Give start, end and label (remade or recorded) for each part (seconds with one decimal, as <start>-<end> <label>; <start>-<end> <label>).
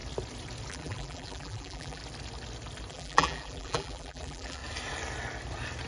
0.0-0.7 recorded; 0.7-2.0 remade; 2.0-2.9 recorded; 2.9-4.6 remade; 4.6-5.9 recorded